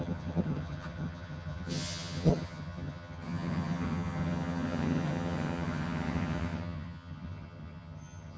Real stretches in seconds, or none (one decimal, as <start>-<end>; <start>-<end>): none